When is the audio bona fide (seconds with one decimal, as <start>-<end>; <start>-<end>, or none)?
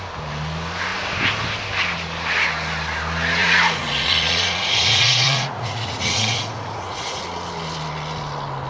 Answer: 0.0-3.4; 7.2-8.7